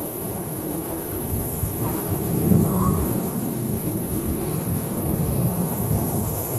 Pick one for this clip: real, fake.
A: fake